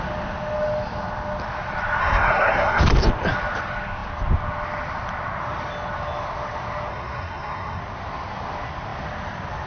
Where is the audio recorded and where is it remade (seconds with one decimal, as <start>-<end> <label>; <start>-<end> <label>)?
0.0-2.0 recorded; 2.0-2.8 remade; 2.8-6.9 recorded; 6.9-7.8 remade; 7.8-9.7 recorded